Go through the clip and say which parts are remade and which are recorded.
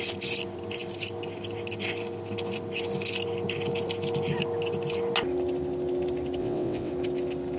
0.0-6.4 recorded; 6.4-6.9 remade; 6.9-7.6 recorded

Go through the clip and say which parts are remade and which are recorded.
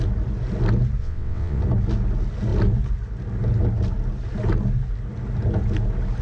0.0-1.0 recorded; 1.0-1.6 remade; 1.6-6.2 recorded